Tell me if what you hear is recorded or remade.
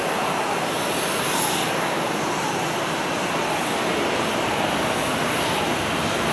recorded